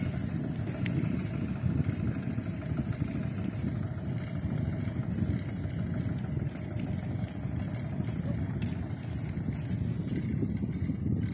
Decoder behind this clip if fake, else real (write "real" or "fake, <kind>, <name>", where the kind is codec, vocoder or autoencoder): real